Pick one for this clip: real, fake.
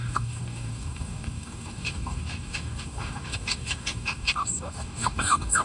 fake